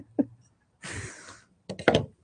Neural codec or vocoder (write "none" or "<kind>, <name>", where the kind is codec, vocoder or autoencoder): none